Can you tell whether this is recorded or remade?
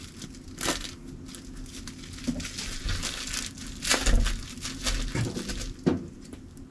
recorded